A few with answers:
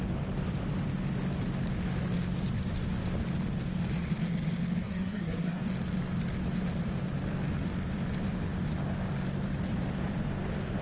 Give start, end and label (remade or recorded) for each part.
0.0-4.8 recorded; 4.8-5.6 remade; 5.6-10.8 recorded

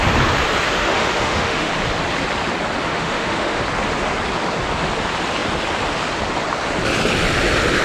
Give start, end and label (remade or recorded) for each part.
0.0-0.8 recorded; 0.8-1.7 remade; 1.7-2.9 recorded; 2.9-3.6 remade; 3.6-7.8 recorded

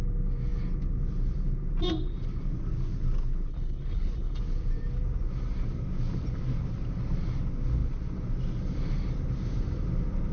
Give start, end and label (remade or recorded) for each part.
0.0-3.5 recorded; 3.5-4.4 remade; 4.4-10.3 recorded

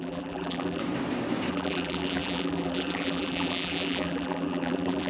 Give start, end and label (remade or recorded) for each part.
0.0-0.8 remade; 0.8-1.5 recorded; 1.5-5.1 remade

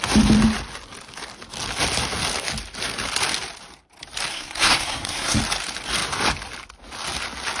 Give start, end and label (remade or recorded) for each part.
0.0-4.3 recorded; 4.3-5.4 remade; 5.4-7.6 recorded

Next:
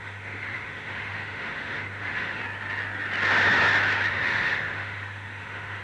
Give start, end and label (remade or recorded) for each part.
0.0-2.4 remade; 2.4-4.1 recorded; 4.1-5.8 remade

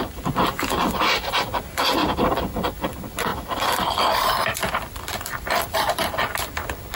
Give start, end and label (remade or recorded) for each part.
0.0-3.3 recorded; 3.3-6.1 remade; 6.1-7.0 recorded